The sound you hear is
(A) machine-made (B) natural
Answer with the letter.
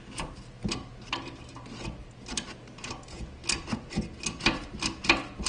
B